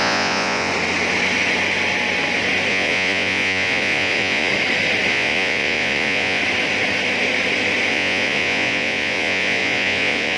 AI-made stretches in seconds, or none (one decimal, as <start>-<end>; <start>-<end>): 0.0-0.7; 2.7-4.5; 5.1-6.4; 7.9-10.4